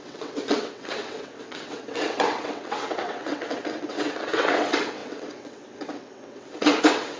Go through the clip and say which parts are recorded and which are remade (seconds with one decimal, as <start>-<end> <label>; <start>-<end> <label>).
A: 0.0-7.2 remade